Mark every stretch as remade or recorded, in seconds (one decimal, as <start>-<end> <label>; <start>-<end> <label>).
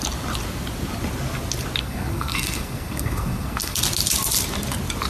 0.0-1.8 recorded; 1.8-3.8 remade; 3.8-5.1 recorded